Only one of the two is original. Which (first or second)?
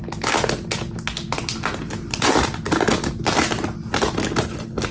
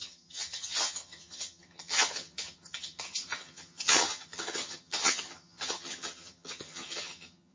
first